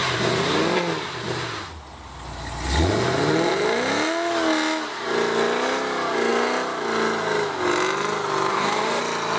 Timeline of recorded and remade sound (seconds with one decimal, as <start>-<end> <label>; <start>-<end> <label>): 0.0-8.5 recorded; 8.5-9.0 remade; 9.0-9.4 recorded